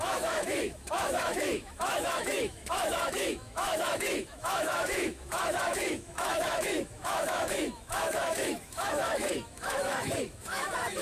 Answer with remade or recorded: remade